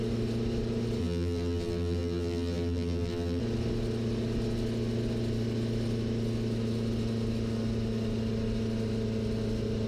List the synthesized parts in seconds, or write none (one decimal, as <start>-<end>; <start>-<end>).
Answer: 1.0-3.4